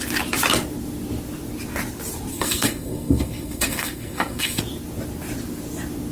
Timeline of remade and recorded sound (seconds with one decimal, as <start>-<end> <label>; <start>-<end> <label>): 0.0-2.3 recorded; 2.3-4.6 remade; 4.6-6.1 recorded